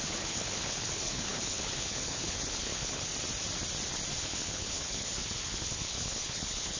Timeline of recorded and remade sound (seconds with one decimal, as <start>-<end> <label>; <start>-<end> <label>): 0.0-3.1 remade; 3.1-4.2 recorded; 4.2-6.8 remade